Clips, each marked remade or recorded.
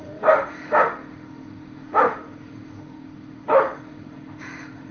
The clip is remade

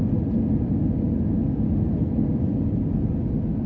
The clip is recorded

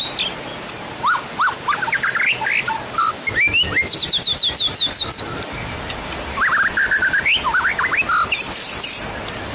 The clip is recorded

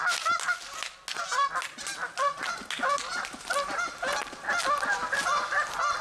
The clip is recorded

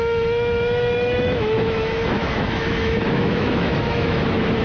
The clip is remade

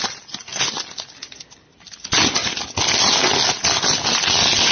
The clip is recorded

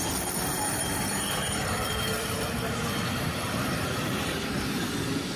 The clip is recorded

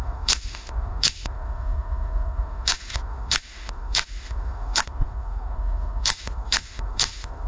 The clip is remade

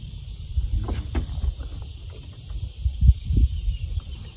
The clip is recorded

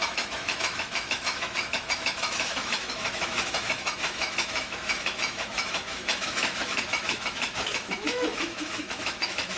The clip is remade